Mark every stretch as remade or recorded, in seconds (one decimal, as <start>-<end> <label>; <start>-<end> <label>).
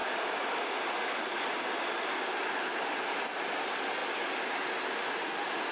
0.0-5.7 recorded